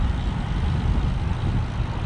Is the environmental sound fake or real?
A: real